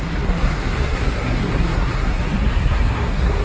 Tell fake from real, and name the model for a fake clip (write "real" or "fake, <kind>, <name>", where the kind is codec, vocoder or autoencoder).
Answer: fake, codec, SNAC